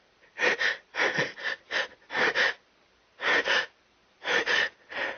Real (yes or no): yes